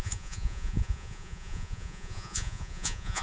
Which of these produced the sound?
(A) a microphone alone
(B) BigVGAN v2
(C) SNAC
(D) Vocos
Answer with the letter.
D